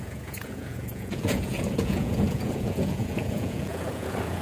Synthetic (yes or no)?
yes